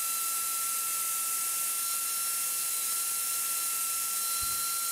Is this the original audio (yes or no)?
yes